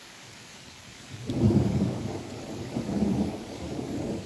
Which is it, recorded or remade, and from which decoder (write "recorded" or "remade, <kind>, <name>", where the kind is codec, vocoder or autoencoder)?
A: remade, codec, DAC